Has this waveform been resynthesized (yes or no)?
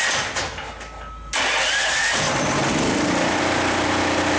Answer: no